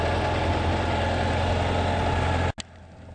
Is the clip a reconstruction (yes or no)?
no